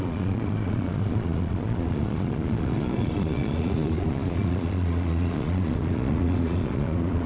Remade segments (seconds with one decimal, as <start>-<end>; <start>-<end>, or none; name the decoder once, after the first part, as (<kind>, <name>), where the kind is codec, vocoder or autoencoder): 0.0-7.3 (vocoder, Vocos)

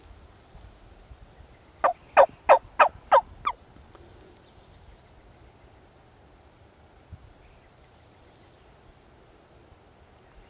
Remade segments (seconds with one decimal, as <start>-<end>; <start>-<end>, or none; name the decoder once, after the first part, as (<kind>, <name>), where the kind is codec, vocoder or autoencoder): none

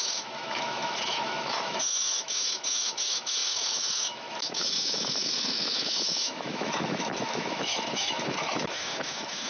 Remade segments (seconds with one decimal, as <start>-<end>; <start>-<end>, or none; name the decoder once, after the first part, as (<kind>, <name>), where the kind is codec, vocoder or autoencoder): 0.0-9.5 (autoencoder, DAC-VAE)

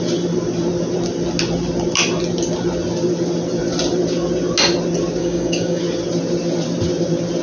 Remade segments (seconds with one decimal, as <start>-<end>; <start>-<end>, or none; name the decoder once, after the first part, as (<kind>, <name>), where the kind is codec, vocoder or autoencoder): 5.2-5.8 (codec, DAC)

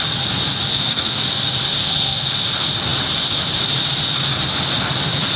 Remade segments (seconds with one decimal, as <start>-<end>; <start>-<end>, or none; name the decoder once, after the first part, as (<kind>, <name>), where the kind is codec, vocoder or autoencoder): 0.7-1.2 (codec, SNAC); 1.8-2.3